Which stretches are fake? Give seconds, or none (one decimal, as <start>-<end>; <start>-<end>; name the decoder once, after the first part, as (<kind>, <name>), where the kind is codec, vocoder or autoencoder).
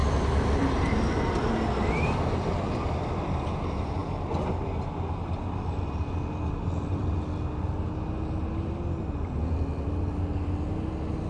none